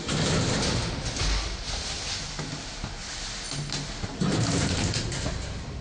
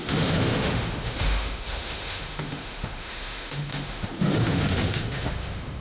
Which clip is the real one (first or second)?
first